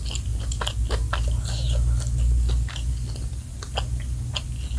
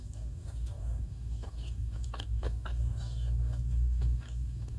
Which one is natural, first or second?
first